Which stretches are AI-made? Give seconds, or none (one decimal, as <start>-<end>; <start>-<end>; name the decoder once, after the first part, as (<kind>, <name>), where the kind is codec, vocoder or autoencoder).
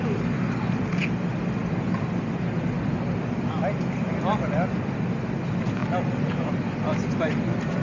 none